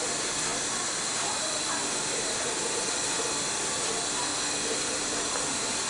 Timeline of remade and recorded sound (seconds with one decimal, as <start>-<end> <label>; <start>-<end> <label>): 0.0-4.3 remade; 4.3-4.8 recorded; 4.8-5.9 remade